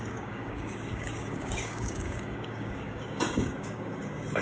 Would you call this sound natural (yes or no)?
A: no